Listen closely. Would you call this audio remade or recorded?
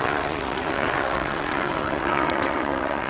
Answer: remade